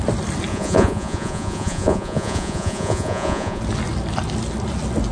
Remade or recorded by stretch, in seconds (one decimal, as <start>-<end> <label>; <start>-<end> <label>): 0.0-0.5 recorded; 0.5-3.6 remade; 3.6-5.1 recorded